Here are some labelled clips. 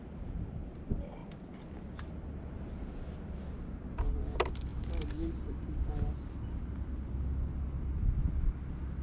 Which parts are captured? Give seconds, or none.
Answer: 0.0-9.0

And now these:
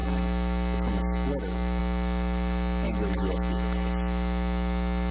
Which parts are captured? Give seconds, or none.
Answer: none

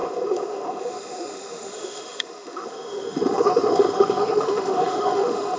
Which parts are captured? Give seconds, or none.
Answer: none

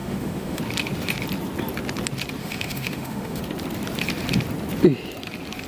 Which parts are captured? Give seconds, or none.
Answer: 0.6-2.4; 3.4-5.7

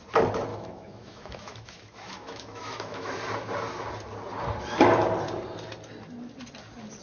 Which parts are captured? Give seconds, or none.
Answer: 0.0-0.5; 3.1-7.0

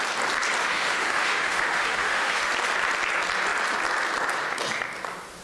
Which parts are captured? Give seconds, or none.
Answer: 0.0-0.6; 2.5-5.4